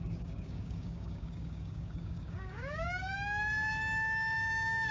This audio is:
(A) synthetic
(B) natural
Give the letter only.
A